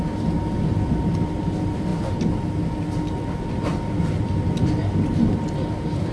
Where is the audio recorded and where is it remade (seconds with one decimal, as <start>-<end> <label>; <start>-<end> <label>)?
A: 0.0-6.1 recorded